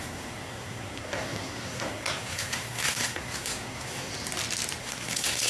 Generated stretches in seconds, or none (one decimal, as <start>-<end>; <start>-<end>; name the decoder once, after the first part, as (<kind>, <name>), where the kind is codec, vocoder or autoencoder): 0.0-4.1 (codec, SNAC); 4.8-5.5